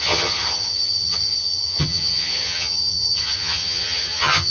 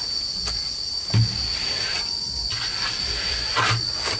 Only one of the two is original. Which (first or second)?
second